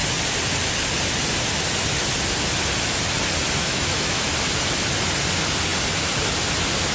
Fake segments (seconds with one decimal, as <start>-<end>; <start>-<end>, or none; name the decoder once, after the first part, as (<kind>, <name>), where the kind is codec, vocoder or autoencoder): 3.6-4.3 (autoencoder, DAC-VAE)